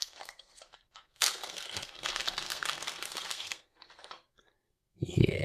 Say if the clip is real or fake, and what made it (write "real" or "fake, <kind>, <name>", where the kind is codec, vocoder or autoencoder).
fake, codec, SNAC